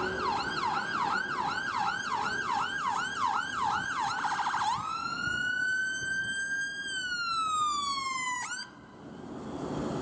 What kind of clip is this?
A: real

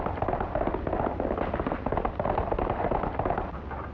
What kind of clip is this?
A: real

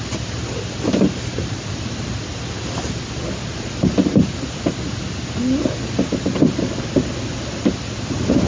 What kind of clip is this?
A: real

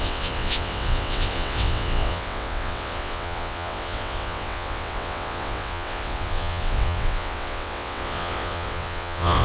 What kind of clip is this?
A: fake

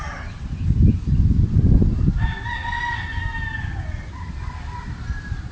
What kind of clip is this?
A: real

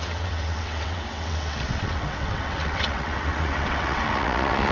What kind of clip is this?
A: fake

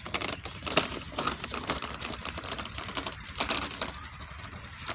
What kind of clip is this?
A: real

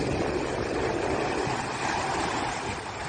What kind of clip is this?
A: real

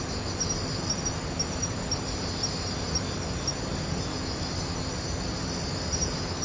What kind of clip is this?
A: real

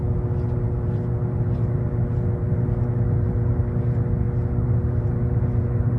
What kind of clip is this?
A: real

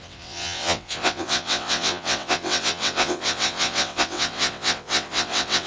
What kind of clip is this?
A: fake